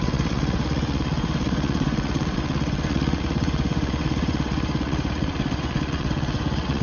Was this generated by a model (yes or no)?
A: yes